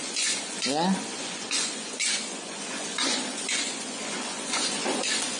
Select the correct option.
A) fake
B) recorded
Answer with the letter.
A